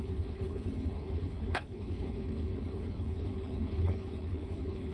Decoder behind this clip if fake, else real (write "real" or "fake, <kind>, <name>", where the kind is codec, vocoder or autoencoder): fake, codec, HILCodec